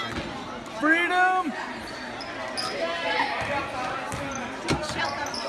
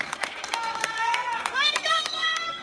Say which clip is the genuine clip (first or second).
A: first